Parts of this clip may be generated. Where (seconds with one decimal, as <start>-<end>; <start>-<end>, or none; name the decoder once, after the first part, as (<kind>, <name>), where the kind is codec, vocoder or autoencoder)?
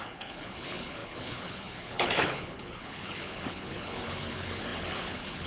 0.0-5.5 (codec, HILCodec)